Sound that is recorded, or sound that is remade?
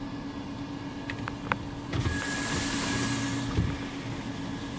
recorded